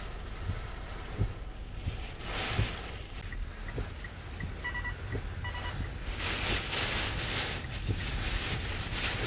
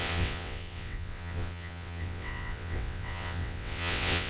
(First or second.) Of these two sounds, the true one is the first